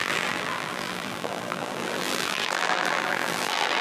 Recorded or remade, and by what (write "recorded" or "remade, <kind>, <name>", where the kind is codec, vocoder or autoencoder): remade, vocoder, BigVGAN v2